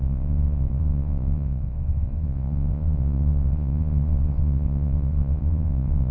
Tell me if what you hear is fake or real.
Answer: fake